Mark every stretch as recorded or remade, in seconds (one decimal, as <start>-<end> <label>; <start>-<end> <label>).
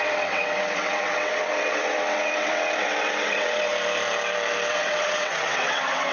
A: 0.0-3.7 remade; 3.7-4.7 recorded; 4.7-6.1 remade